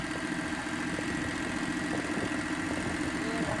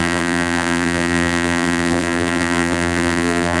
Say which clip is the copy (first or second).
second